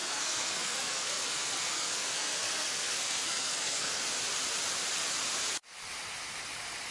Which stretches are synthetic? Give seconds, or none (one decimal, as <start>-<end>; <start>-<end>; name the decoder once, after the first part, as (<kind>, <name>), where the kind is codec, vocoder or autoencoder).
0.0-4.1 (codec, SNAC)